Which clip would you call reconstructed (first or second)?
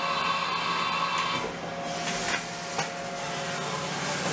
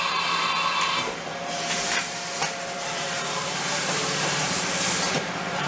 second